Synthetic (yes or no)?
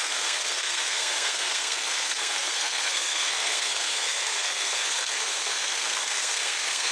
yes